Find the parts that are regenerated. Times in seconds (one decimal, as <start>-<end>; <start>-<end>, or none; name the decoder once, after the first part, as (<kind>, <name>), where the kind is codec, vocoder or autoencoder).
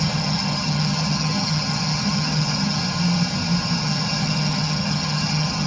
0.0-2.8 (vocoder, HiFi-GAN); 3.8-5.7